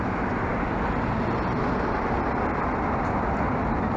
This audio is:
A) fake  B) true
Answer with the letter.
B